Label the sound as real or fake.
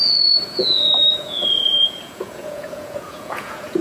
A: fake